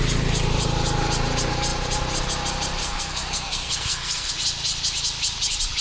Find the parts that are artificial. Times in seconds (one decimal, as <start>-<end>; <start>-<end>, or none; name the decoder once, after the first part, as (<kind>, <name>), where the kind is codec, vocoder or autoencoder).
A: 2.8-4.3 (codec, SNAC)